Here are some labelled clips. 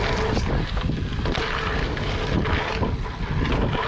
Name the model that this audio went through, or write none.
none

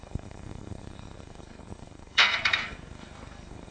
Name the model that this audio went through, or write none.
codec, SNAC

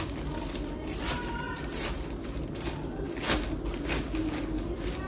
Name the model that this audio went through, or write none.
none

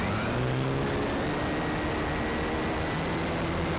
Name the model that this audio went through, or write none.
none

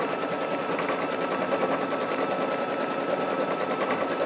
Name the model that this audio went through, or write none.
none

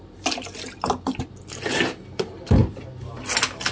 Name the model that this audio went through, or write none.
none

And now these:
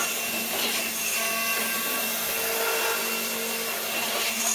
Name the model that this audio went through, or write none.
none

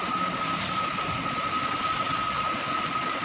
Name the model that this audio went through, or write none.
none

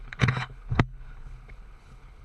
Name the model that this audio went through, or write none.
codec, HILCodec